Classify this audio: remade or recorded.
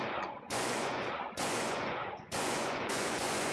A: remade